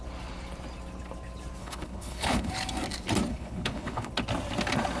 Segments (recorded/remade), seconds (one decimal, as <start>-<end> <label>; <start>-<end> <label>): 0.0-1.6 recorded; 1.6-2.5 remade; 2.5-3.3 recorded; 3.3-4.1 remade; 4.1-5.0 recorded